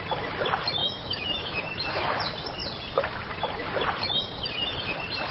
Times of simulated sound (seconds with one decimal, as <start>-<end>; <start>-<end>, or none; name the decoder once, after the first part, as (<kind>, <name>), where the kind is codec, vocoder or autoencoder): 0.8-1.9 (autoencoder, DAC-VAE)